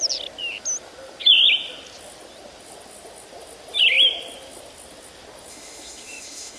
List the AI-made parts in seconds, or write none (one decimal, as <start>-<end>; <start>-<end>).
5.5-6.6